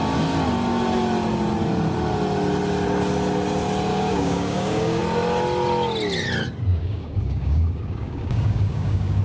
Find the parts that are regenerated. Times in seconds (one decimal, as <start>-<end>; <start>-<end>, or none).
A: 3.9-5.0; 6.7-9.2